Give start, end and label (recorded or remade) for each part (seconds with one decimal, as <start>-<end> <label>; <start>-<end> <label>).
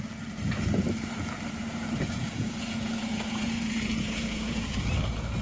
0.0-1.7 recorded; 1.7-4.9 remade; 4.9-5.4 recorded